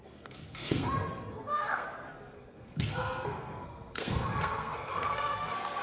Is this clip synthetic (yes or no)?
yes